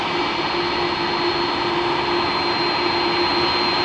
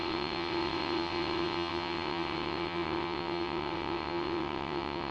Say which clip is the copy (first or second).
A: second